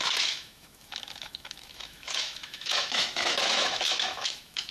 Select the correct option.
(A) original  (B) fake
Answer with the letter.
B